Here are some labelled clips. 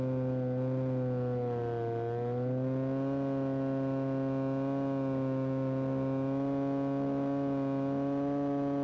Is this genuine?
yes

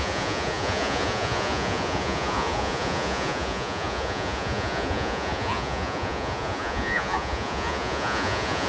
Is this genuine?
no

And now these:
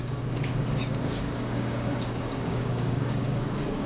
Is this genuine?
no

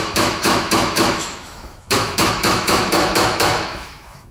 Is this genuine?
no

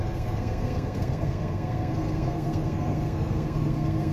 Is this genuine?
no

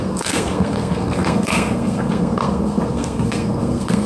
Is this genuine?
no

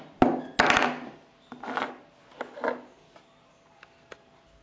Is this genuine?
yes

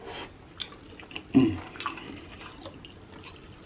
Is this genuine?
yes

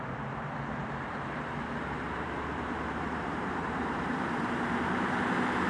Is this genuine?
no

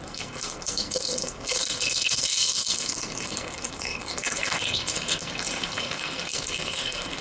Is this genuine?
no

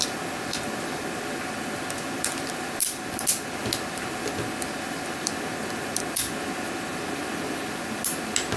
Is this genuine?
yes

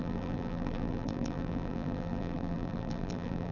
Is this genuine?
no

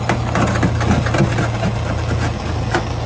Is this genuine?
yes